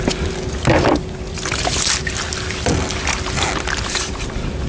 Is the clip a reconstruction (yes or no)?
no